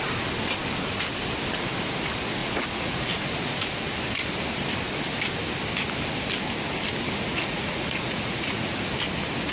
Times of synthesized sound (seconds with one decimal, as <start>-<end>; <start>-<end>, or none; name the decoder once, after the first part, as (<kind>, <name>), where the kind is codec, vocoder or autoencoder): 2.4-3.1 (vocoder, Vocos); 7.3-8.8